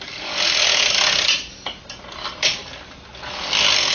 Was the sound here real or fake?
real